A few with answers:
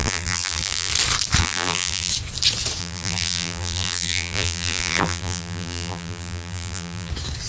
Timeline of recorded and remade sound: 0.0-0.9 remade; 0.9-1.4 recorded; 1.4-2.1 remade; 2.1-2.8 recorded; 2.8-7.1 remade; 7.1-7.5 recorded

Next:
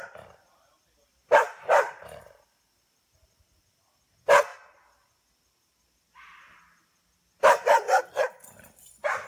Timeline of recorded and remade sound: 0.0-1.0 recorded; 1.0-4.0 remade; 4.0-9.3 recorded

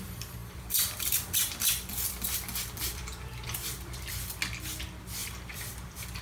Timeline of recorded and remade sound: 0.0-0.4 recorded; 0.4-4.1 remade; 4.1-5.2 recorded; 5.2-6.2 remade

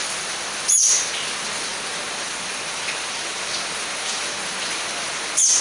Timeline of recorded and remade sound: 0.0-0.6 remade; 0.6-5.6 recorded